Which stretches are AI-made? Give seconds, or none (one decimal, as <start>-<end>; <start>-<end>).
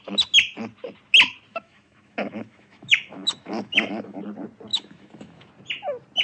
1.5-4.2; 4.7-5.5